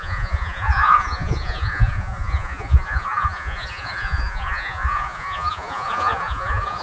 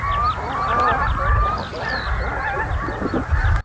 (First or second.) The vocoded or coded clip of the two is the first